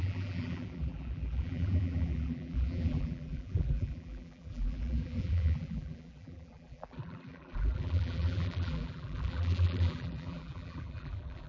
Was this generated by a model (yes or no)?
yes